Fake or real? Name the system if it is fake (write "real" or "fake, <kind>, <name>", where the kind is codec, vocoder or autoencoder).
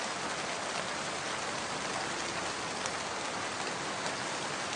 real